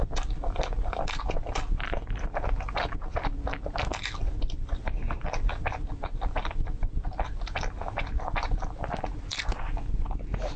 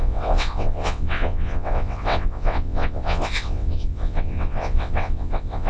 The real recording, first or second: first